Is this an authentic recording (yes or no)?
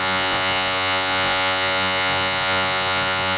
no